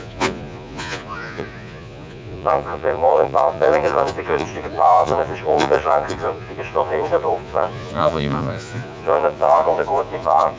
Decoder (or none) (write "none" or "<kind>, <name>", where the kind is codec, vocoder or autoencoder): vocoder, Vocos